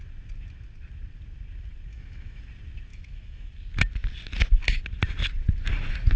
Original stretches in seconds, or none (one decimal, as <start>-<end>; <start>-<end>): 0.0-1.9; 2.4-2.9; 3.5-6.2